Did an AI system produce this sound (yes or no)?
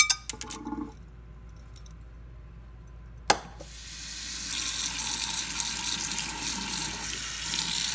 no